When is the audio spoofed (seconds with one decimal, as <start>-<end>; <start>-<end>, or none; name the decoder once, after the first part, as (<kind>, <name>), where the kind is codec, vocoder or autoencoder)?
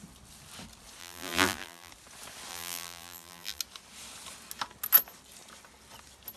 1.0-1.9 (vocoder, BigVGAN v2); 2.5-3.6